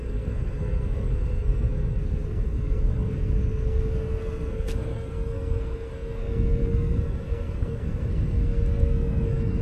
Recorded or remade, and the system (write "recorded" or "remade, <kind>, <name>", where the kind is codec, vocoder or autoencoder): remade, codec, SNAC